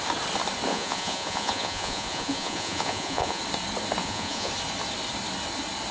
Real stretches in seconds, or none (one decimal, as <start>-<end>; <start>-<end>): 0.0-0.7; 3.4-4.0; 4.5-5.9